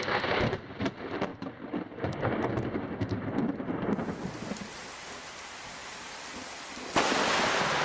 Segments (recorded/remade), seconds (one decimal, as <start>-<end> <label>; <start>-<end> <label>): 0.0-1.3 recorded; 1.3-2.3 remade; 2.3-7.8 recorded